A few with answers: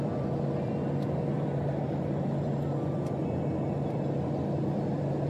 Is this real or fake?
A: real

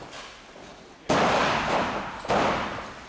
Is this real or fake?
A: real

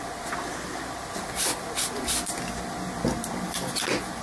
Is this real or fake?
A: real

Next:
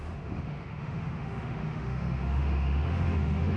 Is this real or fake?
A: fake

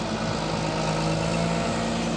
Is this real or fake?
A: real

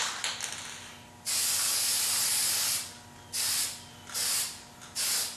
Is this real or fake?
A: real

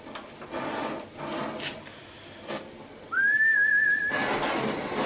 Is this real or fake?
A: real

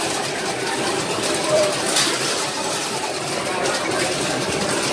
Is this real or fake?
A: fake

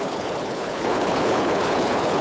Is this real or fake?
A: fake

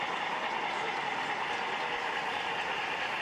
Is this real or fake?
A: real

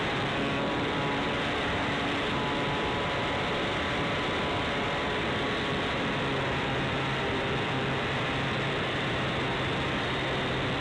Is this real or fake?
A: fake